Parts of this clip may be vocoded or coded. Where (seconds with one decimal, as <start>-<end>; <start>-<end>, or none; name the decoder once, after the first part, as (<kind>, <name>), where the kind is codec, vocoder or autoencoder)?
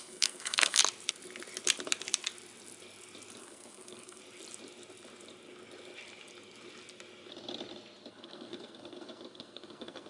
0.0-0.8 (codec, SNAC); 3.4-4.2; 8.1-10.1